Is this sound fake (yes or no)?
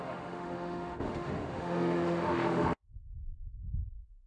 yes